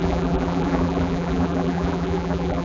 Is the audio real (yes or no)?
no